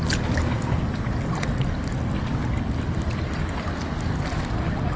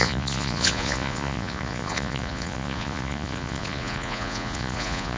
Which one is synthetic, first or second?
second